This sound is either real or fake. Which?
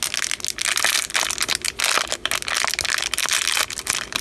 real